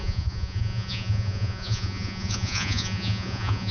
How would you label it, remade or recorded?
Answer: remade